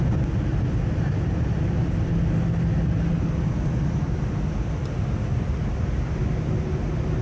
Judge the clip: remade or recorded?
recorded